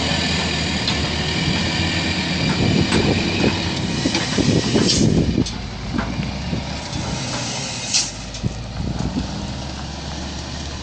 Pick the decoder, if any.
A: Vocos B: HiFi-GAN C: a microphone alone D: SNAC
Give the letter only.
C